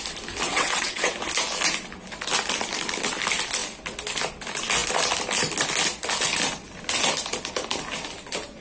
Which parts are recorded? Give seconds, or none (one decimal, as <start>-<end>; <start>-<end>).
0.0-0.5; 1.1-8.6